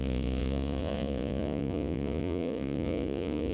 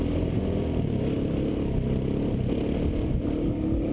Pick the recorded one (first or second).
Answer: second